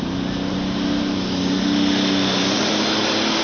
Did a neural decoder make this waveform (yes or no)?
no